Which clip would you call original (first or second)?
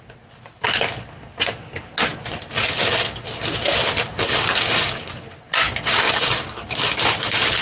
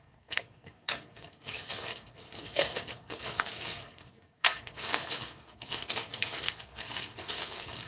first